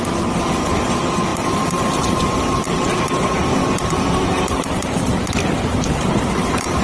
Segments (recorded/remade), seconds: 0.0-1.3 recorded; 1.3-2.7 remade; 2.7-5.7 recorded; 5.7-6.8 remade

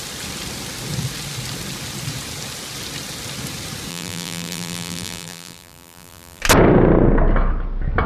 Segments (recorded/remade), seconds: 0.0-3.9 recorded; 3.9-6.4 remade; 6.4-8.1 recorded

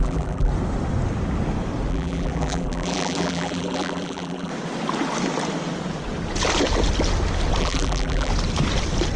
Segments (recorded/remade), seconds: 0.0-0.5 remade; 0.5-1.9 recorded; 1.9-4.5 remade; 4.5-7.6 recorded; 7.6-8.3 remade; 8.3-9.2 recorded

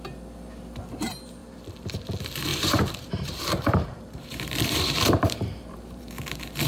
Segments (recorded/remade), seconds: 0.0-1.4 recorded; 1.4-1.9 remade; 1.9-2.5 recorded; 2.5-6.0 remade; 6.0-6.7 recorded

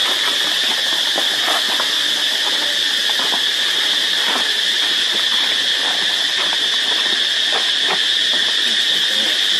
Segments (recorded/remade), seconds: 0.0-5.3 recorded; 5.3-6.1 remade; 6.1-8.4 recorded; 8.4-9.2 remade; 9.2-9.6 recorded

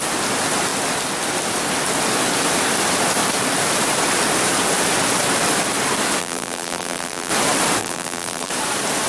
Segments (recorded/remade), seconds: 0.0-6.2 recorded; 6.2-7.3 remade; 7.3-7.8 recorded; 7.8-8.5 remade; 8.5-9.1 recorded

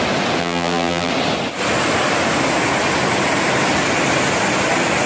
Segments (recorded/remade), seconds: 0.0-0.4 recorded; 0.4-1.1 remade; 1.1-5.1 recorded